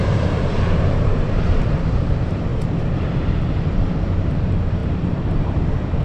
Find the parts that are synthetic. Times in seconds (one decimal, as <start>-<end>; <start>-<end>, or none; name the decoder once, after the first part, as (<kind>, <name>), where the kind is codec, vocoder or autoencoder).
0.0-6.0 (vocoder, BigVGAN v2)